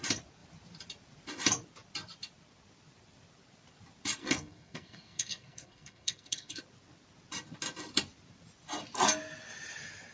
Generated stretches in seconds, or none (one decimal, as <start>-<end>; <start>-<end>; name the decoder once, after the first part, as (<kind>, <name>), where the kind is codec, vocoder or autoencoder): 4.2-6.6 (codec, SNAC)